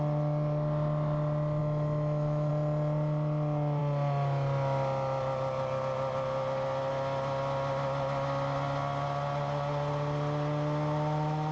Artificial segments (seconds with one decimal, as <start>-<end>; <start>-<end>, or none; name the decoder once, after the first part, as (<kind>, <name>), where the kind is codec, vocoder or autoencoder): 1.6-2.5 (autoencoder, DAC-VAE)